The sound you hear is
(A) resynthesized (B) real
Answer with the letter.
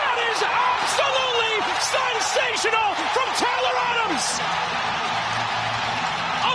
B